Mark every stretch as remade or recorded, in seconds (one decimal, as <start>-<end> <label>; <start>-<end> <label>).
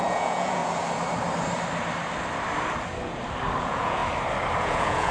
0.0-0.6 remade; 0.6-3.6 recorded; 3.6-4.0 remade; 4.0-4.6 recorded; 4.6-5.1 remade